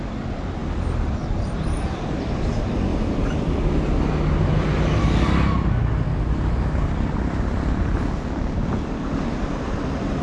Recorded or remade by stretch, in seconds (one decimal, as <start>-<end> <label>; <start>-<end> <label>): 0.0-10.2 recorded